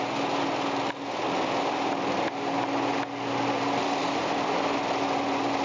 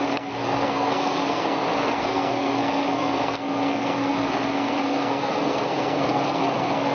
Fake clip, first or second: second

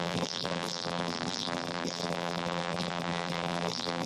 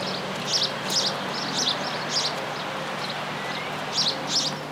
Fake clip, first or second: first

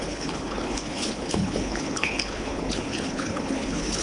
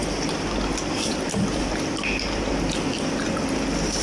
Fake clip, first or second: first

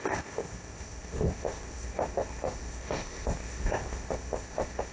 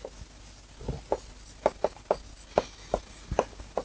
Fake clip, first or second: first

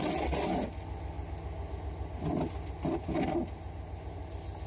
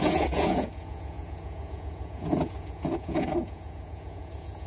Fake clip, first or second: second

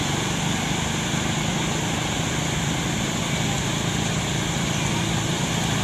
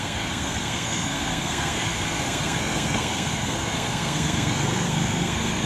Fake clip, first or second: second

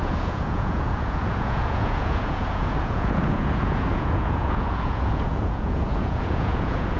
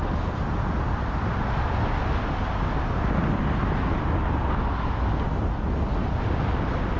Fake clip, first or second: first